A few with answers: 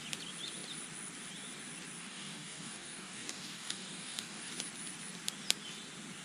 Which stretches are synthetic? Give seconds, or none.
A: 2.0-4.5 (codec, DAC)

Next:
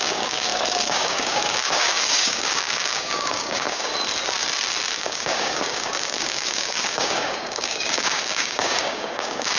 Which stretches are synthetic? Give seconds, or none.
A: 0.0-3.9 (codec, DAC); 5.0-9.6

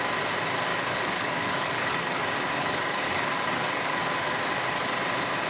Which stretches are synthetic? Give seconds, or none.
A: 0.7-4.0 (codec, DAC)

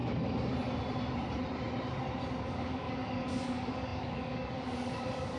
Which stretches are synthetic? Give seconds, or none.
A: 2.4-5.4 (codec, DAC)

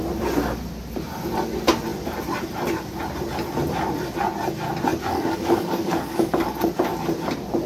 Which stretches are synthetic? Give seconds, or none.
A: 4.9-6.6 (codec, DAC)

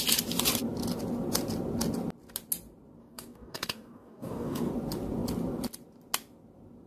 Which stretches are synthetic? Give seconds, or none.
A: 3.0-4.7 (codec, DAC)